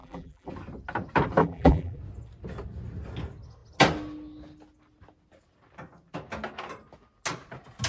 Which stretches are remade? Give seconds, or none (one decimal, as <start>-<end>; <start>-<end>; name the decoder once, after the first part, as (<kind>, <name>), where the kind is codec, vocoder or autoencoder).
0.0-0.5 (vocoder, BigVGAN v2); 1.4-2.0